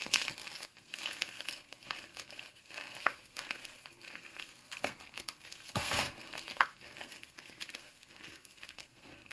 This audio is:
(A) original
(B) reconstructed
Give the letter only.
B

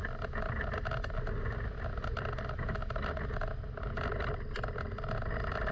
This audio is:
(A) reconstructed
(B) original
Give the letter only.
B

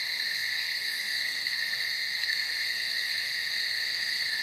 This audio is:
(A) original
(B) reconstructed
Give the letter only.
B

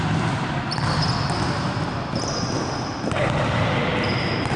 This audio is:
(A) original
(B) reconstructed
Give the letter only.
A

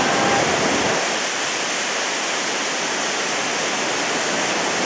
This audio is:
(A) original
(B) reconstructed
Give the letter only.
A